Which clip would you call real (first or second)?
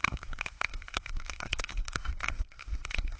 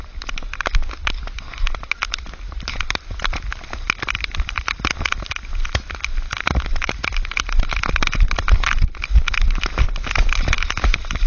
second